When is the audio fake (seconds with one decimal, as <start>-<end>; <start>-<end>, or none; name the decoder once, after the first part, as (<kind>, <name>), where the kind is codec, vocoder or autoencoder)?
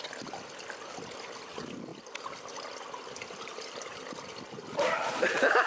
none